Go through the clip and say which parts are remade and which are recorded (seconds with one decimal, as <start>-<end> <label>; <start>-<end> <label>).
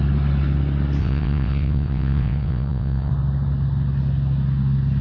0.0-1.0 recorded; 1.0-3.1 remade; 3.1-5.0 recorded